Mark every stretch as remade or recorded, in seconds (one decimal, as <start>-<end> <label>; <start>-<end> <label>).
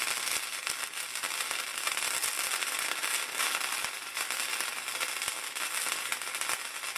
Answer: 0.0-6.1 remade; 6.1-6.6 recorded; 6.6-7.0 remade